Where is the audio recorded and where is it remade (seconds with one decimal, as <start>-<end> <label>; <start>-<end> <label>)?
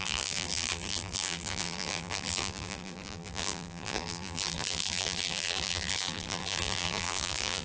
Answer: 0.0-7.6 remade